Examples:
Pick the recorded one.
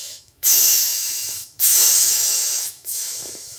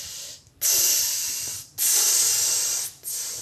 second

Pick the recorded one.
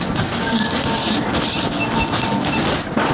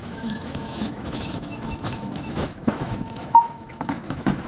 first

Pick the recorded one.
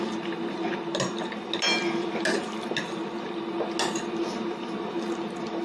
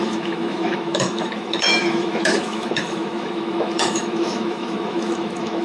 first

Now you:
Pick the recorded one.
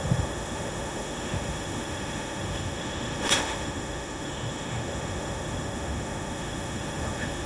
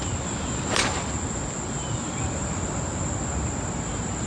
second